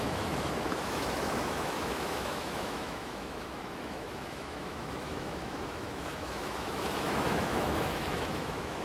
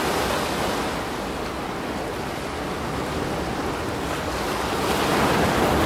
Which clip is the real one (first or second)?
second